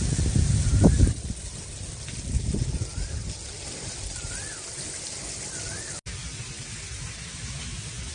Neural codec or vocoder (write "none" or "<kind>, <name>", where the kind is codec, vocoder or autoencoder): none